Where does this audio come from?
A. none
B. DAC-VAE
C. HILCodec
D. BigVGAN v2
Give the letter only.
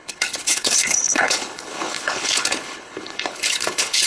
C